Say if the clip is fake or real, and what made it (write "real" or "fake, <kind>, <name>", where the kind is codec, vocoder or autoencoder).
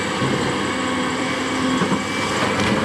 real